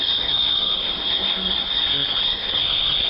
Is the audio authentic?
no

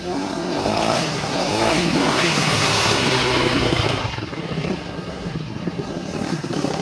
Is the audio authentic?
no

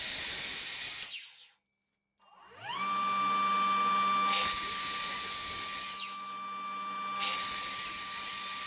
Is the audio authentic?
yes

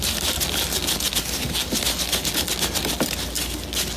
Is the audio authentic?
yes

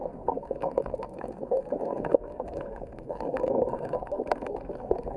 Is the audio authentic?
no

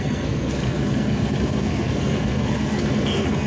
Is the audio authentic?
no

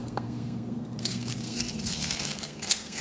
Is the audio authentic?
no